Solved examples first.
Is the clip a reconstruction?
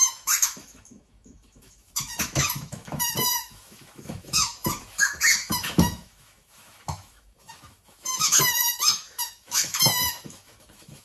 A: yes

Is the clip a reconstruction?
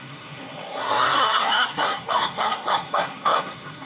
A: yes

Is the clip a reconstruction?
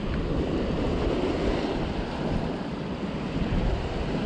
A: no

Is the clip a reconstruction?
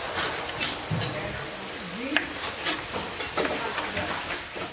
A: no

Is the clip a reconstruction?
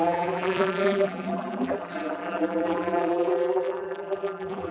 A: yes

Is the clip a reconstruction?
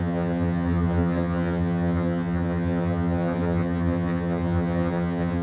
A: yes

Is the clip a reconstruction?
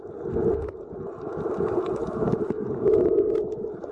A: no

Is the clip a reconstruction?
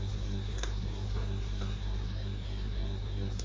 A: yes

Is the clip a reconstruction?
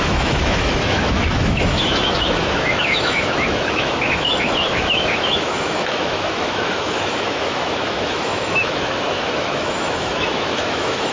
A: yes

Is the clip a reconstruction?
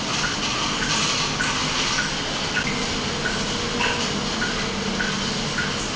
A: no